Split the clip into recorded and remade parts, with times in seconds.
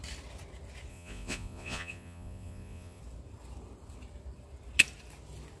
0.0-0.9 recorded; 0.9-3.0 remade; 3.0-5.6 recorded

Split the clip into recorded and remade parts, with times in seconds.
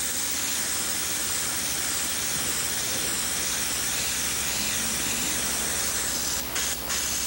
0.0-7.3 recorded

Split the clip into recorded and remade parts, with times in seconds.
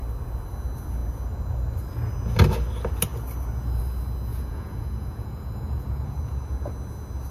0.0-4.3 recorded; 4.3-6.7 remade; 6.7-7.3 recorded